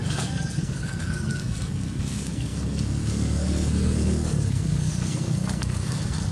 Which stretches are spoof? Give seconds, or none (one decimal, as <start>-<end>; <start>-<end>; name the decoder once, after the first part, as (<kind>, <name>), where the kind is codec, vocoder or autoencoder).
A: 0.0-6.3 (codec, SNAC)